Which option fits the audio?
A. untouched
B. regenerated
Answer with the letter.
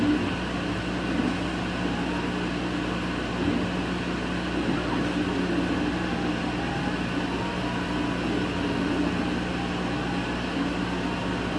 A